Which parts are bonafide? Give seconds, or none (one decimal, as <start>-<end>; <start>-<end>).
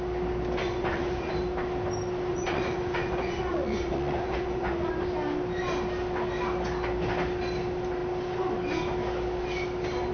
0.0-0.6; 1.3-2.3; 4.9-10.1